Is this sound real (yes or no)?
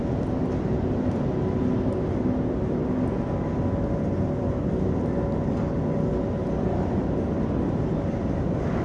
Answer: yes